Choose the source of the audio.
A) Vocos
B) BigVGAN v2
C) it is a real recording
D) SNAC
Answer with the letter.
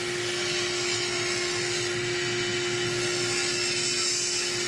C